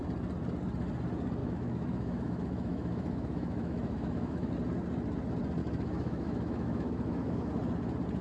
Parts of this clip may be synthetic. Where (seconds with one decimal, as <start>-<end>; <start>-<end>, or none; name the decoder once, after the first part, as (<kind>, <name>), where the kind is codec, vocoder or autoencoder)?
1.4-4.5 (autoencoder, DAC-VAE); 5.6-7.5